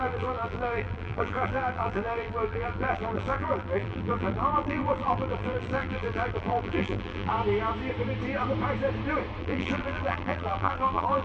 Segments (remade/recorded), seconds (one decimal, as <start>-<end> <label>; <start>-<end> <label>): 0.0-7.3 remade; 7.3-9.4 recorded; 9.4-11.2 remade